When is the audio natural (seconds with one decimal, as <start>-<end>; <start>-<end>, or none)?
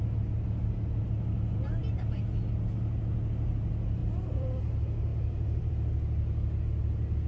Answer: 0.0-4.0; 4.6-5.1; 5.7-7.3